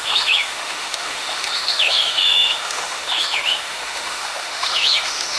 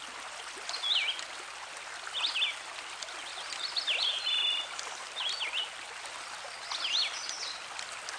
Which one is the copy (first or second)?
first